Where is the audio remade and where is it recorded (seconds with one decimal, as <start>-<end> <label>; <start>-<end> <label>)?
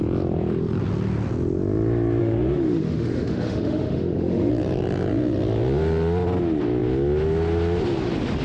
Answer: 0.0-2.2 recorded; 2.2-4.5 remade; 4.5-8.4 recorded